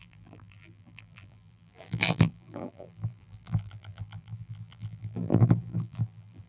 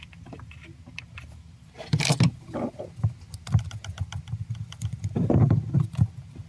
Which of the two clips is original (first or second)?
second